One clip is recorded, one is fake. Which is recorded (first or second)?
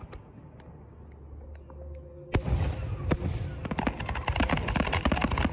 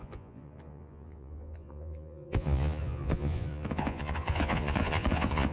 first